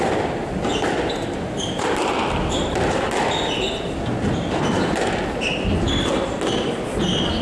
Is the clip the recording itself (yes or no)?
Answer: yes